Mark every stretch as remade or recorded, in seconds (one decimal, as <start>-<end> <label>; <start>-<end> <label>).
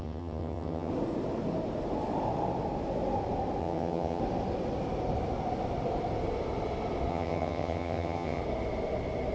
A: 0.0-0.9 remade; 0.9-3.6 recorded; 3.6-4.2 remade; 4.2-7.1 recorded; 7.1-8.4 remade; 8.4-9.3 recorded